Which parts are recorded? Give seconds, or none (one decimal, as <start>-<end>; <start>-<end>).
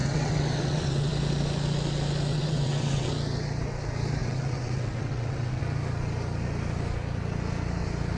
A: 1.1-2.3; 3.1-4.2; 5.6-8.2